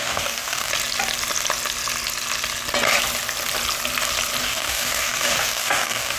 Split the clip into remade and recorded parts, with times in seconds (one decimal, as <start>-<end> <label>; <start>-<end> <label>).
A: 0.0-0.7 remade; 0.7-4.4 recorded; 4.4-6.2 remade